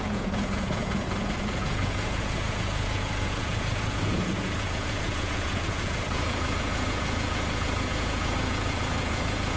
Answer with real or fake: fake